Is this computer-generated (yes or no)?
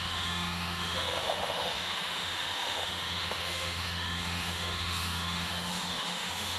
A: yes